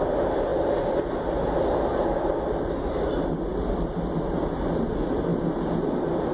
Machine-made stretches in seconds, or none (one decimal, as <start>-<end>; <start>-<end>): none